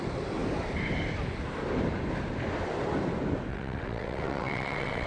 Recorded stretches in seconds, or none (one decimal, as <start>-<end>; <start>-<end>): 0.0-3.5